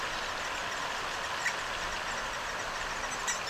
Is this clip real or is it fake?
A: real